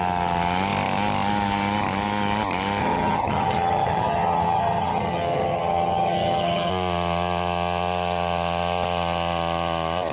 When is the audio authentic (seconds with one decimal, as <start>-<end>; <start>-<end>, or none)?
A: 0.0-2.8; 6.7-10.1